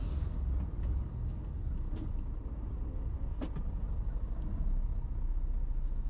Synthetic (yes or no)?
no